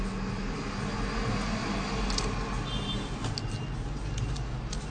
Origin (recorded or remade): recorded